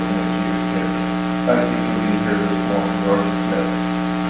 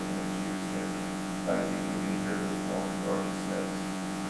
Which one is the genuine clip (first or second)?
first